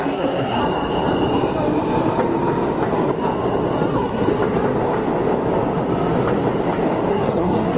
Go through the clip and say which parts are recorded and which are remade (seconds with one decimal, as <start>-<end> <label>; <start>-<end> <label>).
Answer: 0.0-0.6 remade; 0.6-3.9 recorded; 3.9-4.3 remade; 4.3-7.1 recorded; 7.1-7.8 remade